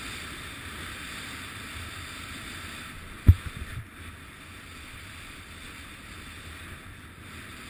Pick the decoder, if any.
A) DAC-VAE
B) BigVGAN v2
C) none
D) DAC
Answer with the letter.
C